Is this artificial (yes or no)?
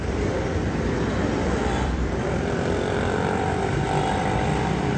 yes